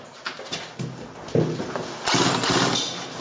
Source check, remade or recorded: recorded